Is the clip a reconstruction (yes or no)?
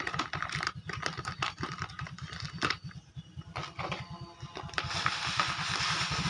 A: no